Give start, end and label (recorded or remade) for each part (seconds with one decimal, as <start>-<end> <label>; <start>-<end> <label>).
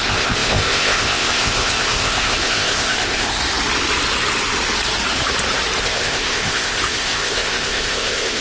0.0-3.4 remade; 3.4-5.8 recorded; 5.8-8.4 remade